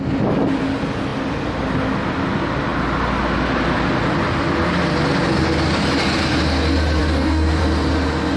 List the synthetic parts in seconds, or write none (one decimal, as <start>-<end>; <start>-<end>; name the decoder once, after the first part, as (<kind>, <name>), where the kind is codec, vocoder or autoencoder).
7.0-7.6 (codec, DAC)